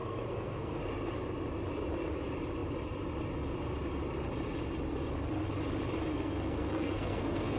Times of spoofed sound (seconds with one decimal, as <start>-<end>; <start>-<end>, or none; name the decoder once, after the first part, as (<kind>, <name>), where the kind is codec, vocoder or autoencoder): 0.0-0.8 (codec, SNAC); 6.1-7.6